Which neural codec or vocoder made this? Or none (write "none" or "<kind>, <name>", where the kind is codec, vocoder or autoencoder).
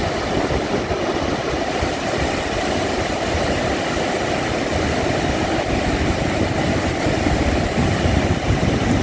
none